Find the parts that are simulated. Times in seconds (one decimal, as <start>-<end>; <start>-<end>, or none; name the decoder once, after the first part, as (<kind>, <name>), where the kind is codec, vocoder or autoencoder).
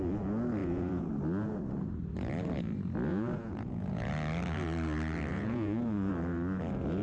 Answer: 0.6-1.1 (vocoder, Vocos); 3.1-4.1; 5.3-6.1